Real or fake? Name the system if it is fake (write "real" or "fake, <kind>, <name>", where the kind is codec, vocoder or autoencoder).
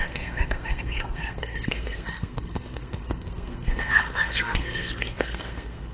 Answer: fake, codec, SNAC